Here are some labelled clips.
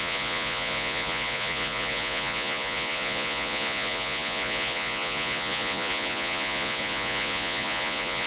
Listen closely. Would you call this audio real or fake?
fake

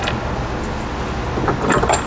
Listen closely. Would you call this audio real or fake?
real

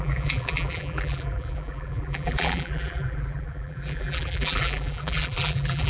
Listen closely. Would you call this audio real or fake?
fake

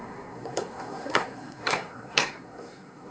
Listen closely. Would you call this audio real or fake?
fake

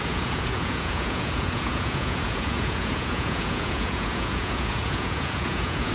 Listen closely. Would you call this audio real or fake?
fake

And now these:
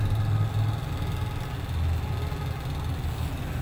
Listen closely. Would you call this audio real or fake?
real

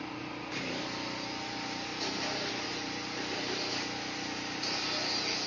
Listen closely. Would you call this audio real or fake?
fake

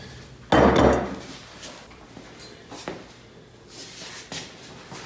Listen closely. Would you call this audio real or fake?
real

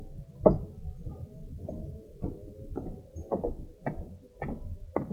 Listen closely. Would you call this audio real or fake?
real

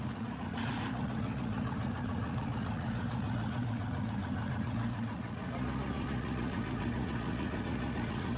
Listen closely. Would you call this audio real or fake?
fake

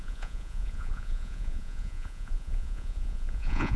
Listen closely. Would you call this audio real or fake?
fake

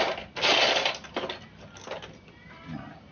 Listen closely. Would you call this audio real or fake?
real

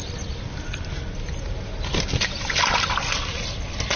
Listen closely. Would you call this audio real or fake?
real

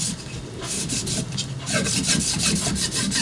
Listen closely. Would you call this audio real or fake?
fake